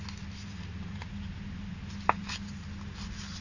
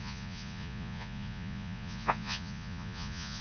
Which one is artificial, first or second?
second